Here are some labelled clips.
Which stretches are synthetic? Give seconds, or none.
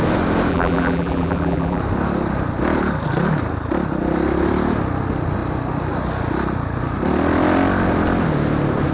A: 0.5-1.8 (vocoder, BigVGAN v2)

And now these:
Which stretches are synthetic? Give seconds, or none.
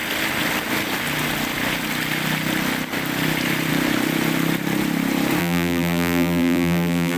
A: 5.4-7.2 (vocoder, BigVGAN v2)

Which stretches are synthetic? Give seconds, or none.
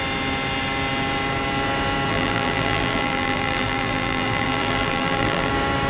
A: 2.1-5.5 (vocoder, BigVGAN v2)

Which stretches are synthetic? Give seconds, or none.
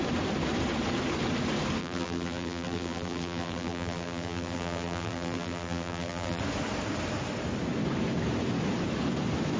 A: 1.8-6.4 (vocoder, BigVGAN v2)